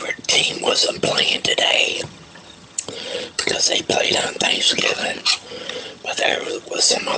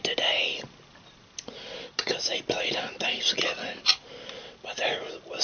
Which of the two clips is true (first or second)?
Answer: second